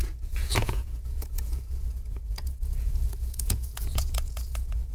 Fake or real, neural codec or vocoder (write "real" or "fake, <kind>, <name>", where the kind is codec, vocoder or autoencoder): fake, vocoder, Vocos